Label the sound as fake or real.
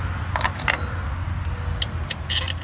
real